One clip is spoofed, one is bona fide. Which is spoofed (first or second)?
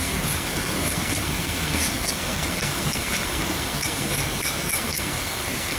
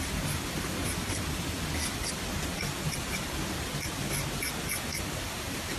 first